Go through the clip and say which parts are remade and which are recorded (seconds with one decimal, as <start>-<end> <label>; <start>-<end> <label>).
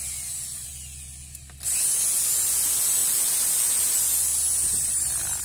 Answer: 0.0-0.7 remade; 0.7-2.1 recorded; 2.1-4.3 remade; 4.3-5.4 recorded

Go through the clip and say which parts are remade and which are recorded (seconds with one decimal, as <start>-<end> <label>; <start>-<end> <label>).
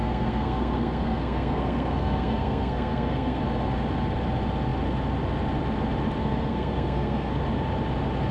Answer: 0.0-3.4 remade; 3.4-6.2 recorded; 6.2-7.4 remade; 7.4-8.3 recorded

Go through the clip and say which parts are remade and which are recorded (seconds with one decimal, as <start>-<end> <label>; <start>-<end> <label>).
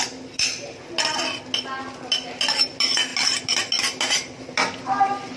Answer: 0.0-5.4 recorded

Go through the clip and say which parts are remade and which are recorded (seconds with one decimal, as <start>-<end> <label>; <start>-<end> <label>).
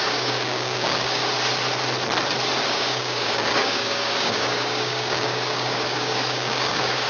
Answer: 0.0-1.2 remade; 1.2-2.7 recorded; 2.7-7.1 remade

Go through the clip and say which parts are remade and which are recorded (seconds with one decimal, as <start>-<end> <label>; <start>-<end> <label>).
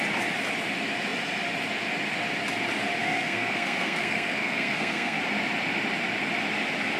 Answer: 0.0-3.0 recorded; 3.0-5.2 remade; 5.2-7.0 recorded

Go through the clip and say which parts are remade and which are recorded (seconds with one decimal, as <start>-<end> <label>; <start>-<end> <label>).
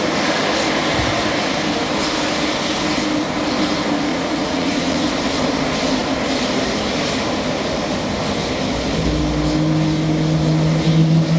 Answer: 0.0-4.1 recorded; 4.1-5.1 remade; 5.1-11.4 recorded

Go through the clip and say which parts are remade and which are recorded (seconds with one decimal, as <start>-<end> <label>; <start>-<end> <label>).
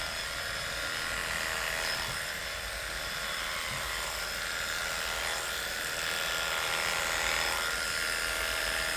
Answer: 0.0-9.0 recorded